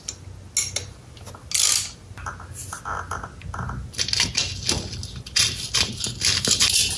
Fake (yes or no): no